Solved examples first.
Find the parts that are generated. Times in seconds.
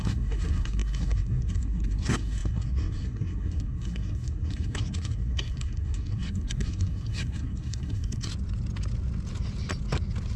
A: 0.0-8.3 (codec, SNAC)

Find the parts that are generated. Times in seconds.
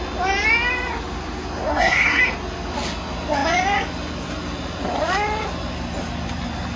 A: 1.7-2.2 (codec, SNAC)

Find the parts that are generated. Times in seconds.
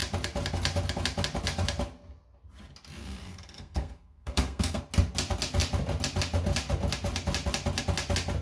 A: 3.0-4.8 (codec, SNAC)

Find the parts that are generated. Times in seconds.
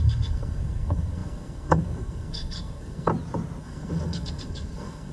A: 0.0-3.1 (codec, SNAC); 3.6-5.1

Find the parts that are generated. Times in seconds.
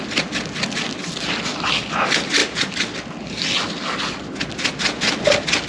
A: none